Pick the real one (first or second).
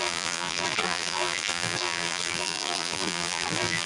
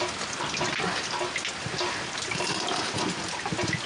second